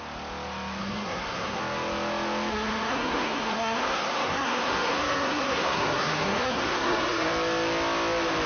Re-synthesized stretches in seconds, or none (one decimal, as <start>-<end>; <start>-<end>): 0.8-1.6; 2.5-7.3